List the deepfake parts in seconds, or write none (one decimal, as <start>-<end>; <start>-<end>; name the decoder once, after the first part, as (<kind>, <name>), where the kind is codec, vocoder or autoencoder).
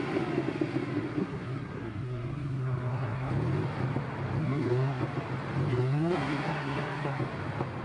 1.2-3.3 (codec, SNAC); 4.4-5.0; 5.7-7.2